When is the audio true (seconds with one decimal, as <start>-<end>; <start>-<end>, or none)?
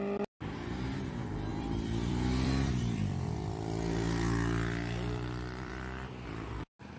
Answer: 0.0-1.5; 5.7-7.0